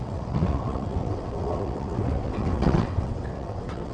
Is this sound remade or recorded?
remade